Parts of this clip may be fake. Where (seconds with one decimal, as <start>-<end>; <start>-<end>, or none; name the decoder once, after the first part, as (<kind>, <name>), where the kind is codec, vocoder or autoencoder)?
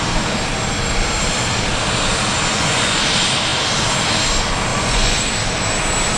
2.5-3.0 (vocoder, Vocos); 4.7-5.2